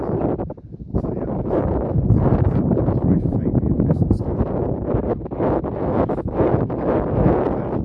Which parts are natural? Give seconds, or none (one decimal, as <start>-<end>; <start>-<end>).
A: 0.0-0.9; 5.5-7.8